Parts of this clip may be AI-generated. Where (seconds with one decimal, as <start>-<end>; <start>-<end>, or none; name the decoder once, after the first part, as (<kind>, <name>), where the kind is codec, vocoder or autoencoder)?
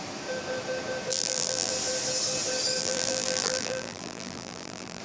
1.1-1.7 (vocoder, BigVGAN v2); 2.8-5.0